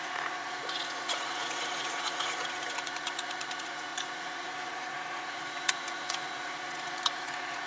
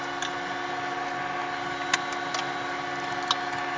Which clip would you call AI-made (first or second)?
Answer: first